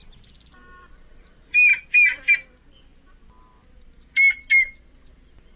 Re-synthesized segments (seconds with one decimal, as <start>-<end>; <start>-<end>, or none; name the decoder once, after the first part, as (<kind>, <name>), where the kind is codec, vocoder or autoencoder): none